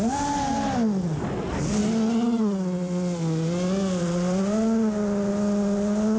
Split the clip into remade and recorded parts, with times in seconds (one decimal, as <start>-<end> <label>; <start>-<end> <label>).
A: 0.0-6.2 recorded